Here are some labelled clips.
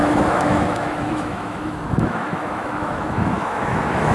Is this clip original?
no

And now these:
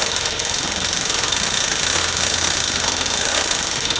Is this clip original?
no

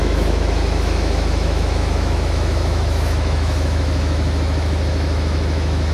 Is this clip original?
no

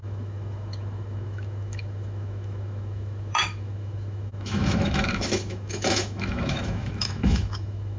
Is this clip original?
no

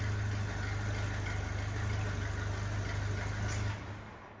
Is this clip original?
yes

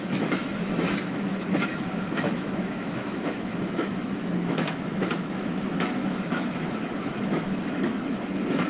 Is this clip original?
no